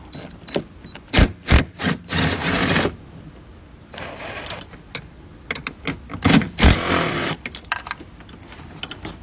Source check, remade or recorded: recorded